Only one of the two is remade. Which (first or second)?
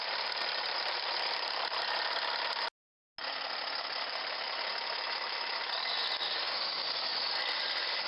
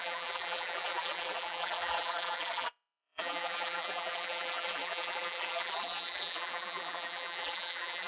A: second